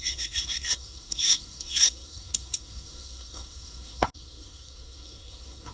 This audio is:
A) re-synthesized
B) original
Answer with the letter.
A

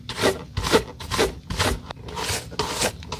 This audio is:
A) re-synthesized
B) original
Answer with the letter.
B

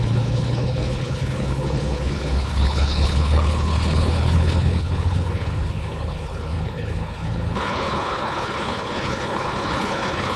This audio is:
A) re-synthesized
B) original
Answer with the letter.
A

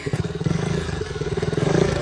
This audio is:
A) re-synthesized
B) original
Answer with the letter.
A